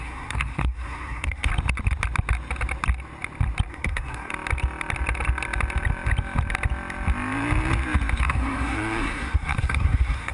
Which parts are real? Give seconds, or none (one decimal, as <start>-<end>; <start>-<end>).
1.5-3.7; 4.3-8.2

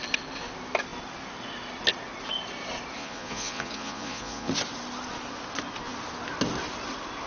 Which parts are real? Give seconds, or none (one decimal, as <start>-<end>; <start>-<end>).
0.0-3.0; 4.5-7.3

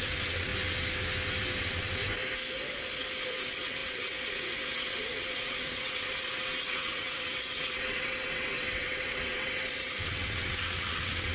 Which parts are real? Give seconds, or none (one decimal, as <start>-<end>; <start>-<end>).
0.5-1.6; 2.0-3.4

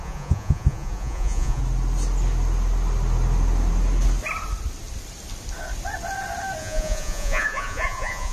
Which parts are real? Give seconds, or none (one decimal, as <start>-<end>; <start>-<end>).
1.6-6.6